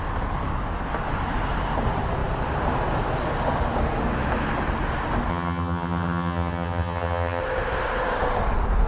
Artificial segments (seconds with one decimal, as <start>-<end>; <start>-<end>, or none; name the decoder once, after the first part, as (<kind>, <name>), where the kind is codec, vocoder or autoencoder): 5.3-7.4 (vocoder, HiFi-GAN)